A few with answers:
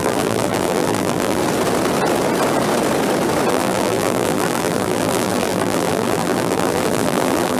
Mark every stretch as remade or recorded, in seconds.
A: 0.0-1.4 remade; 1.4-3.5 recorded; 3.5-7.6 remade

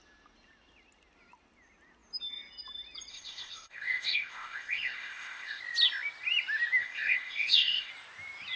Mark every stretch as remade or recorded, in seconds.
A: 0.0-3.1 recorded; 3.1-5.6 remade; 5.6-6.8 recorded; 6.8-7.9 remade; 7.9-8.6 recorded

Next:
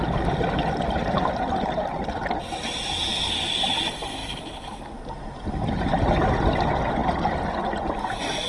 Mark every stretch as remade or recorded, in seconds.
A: 0.0-8.5 recorded